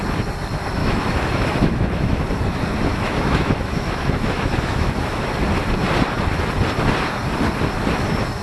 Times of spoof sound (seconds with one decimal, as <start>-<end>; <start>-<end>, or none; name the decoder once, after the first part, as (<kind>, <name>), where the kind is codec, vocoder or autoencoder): 0.8-2.2 (autoencoder, DAC-VAE); 2.9-5.5